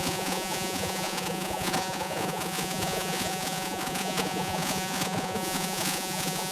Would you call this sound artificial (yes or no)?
yes